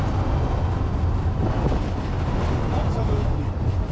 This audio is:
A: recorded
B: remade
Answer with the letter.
A